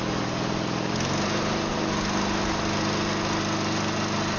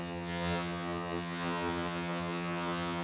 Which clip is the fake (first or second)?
second